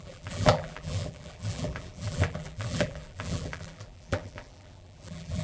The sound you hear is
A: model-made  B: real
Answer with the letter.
A